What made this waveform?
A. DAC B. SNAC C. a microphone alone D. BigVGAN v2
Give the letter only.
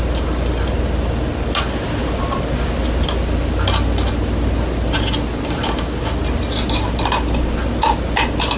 C